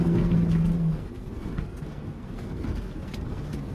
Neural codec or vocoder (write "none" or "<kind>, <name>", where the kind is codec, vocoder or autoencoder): codec, SNAC